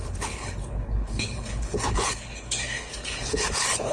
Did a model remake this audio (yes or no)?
yes